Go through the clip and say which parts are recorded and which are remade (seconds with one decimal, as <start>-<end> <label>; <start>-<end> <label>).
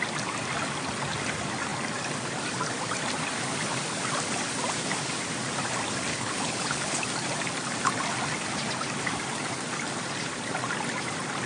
0.0-6.1 recorded; 6.1-7.0 remade; 7.0-11.5 recorded